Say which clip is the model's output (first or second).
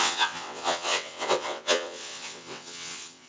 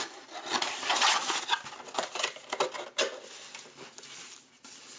first